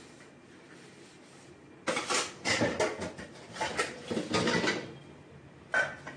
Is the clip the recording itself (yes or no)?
yes